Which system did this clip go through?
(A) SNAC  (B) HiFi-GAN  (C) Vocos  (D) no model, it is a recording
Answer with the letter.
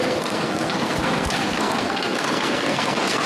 A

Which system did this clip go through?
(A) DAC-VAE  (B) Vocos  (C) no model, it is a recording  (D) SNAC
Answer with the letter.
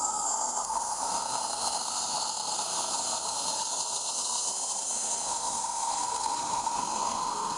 D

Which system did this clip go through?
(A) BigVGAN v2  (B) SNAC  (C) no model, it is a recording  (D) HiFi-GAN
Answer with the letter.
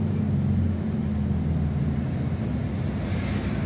C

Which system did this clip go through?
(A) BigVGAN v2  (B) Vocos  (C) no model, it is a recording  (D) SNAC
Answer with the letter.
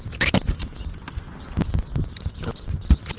C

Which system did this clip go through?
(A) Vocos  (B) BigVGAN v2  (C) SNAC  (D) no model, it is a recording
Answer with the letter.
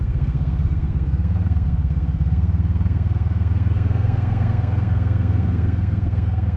C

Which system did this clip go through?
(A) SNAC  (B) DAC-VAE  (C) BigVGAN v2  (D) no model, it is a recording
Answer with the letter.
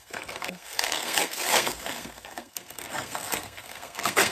A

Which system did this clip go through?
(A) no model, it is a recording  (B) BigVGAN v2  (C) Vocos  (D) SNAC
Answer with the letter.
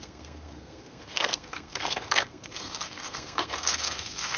D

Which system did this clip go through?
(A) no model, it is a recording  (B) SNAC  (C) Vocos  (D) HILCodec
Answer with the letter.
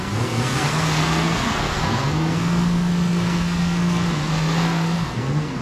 B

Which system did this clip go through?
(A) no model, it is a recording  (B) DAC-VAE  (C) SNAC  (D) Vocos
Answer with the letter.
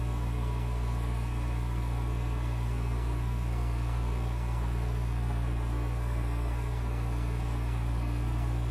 C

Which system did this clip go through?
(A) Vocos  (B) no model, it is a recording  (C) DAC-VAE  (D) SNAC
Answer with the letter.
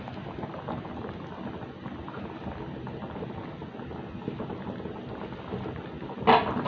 B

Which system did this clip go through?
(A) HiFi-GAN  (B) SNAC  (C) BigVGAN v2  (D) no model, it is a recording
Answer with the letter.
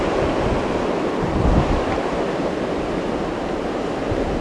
D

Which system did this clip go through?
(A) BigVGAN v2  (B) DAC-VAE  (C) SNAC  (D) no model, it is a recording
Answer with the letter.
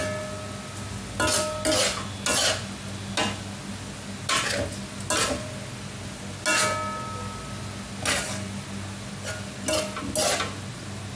D